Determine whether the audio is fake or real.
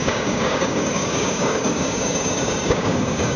fake